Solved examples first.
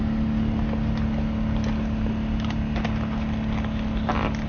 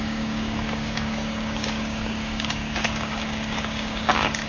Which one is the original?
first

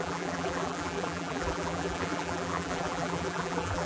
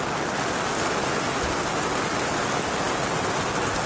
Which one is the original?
second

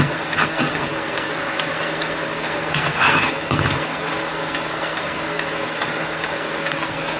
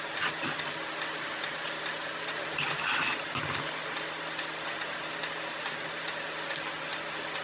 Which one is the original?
second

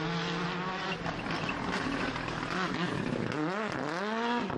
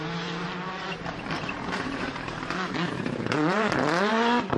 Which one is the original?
first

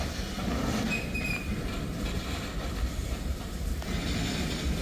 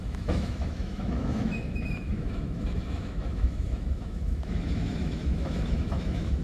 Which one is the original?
first